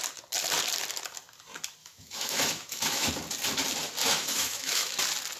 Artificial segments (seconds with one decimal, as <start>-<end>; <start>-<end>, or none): 1.8-3.1; 4.0-5.0